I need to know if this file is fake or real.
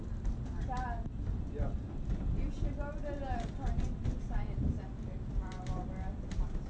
real